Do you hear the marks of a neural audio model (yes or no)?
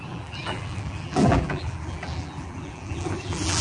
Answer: yes